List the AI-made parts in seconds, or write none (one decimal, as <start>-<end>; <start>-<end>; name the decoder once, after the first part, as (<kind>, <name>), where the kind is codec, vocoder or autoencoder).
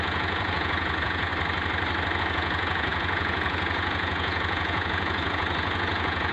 0.0-1.3 (vocoder, Vocos); 2.2-6.3